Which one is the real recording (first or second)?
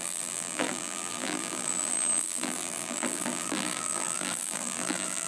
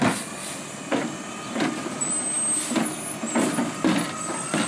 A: second